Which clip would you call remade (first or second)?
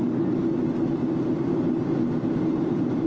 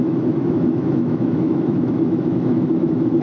second